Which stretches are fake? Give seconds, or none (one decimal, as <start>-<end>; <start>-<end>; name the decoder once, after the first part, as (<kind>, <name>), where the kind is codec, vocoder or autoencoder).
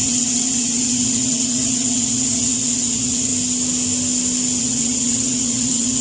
0.0-3.3 (vocoder, WaveNeXt); 4.6-6.0